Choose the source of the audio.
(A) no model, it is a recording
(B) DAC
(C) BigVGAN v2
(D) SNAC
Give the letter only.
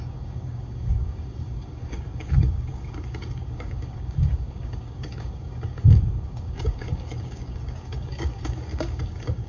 B